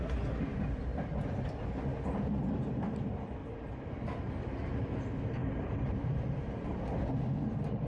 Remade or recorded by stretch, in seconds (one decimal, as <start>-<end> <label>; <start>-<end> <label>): 0.0-3.4 recorded; 3.4-3.9 remade; 3.9-5.4 recorded; 5.4-6.8 remade; 6.8-7.9 recorded